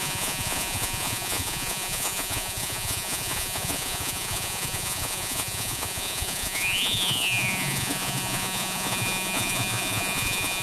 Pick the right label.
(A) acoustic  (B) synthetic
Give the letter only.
B